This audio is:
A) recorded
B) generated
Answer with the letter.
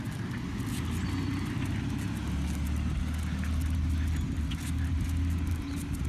A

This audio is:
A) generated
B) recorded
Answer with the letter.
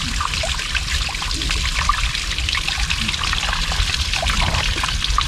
B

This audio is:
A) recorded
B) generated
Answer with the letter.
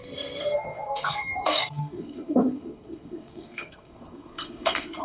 B